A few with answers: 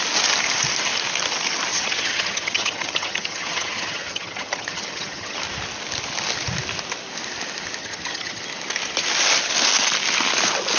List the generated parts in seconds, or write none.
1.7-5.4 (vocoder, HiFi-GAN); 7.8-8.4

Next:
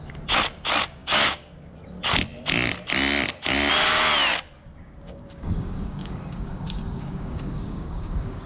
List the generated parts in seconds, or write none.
1.0-1.7 (codec, DAC); 4.8-8.5

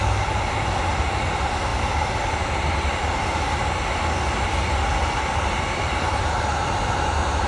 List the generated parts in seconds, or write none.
1.7-6.2 (vocoder, BigVGAN v2)

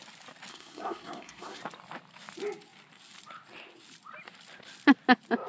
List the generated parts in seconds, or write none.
0.5-1.6 (codec, SNAC)

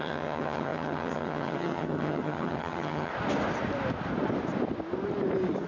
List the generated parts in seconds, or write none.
0.0-3.1 (vocoder, HiFi-GAN)

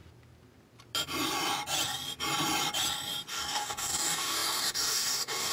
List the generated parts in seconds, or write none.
3.3-5.5 (codec, DAC)